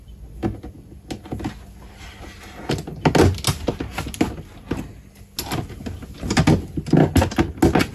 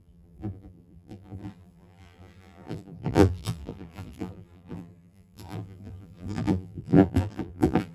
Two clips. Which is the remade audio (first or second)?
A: second